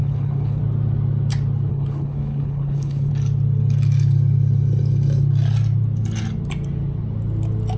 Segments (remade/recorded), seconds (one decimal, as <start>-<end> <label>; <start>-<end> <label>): 0.0-0.6 remade; 0.6-1.7 recorded; 1.7-3.1 remade; 3.1-7.8 recorded